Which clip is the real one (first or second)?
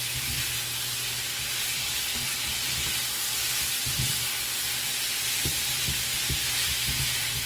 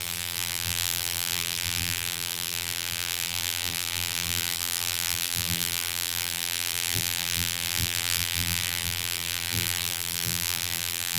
first